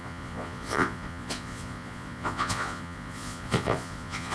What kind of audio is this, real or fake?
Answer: fake